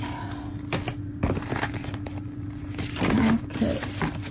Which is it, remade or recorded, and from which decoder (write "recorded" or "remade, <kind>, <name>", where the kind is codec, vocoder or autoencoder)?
recorded